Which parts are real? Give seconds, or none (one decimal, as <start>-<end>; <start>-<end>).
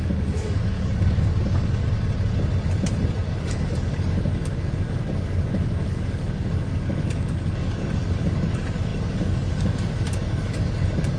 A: 1.8-3.2